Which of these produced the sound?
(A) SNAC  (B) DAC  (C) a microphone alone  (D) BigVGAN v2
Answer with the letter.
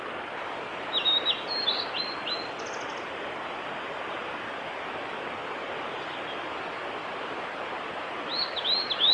C